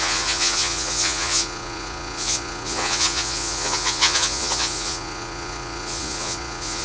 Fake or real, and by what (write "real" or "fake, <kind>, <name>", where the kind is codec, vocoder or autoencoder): fake, vocoder, Vocos